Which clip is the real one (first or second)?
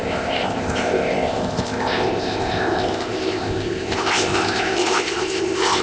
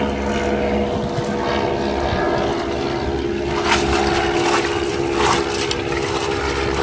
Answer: second